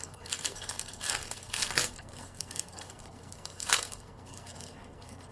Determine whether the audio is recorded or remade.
remade